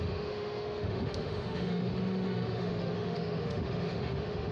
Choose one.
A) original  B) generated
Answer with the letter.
B